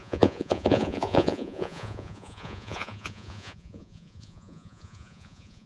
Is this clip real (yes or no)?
no